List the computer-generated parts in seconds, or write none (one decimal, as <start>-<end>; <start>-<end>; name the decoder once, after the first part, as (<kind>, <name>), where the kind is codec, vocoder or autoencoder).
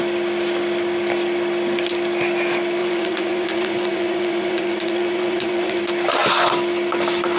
2.8-5.8 (vocoder, Vocos)